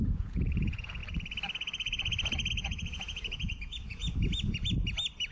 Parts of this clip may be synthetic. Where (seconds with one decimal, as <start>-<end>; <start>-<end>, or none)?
0.0-1.0; 2.5-4.0